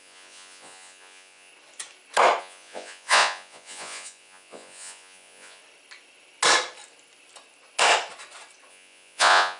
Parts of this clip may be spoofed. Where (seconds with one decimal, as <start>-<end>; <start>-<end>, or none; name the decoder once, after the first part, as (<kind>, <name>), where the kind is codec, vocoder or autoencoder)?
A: 0.0-1.5 (vocoder, Vocos); 2.4-5.6; 8.7-9.6